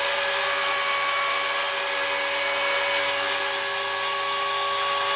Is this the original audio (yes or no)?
yes